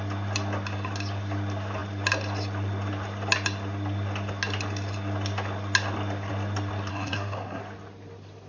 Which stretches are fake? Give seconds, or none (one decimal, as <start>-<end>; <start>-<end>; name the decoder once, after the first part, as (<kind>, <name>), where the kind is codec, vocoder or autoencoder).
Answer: 6.9-7.6 (codec, SNAC)